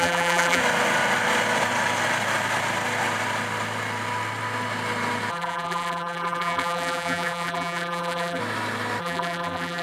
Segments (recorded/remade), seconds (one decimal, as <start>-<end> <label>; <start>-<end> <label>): 0.0-0.6 remade; 0.6-5.3 recorded; 5.3-8.4 remade; 8.4-9.0 recorded; 9.0-9.8 remade